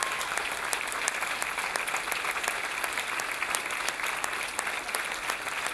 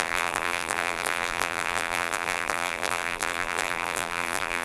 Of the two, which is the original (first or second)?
first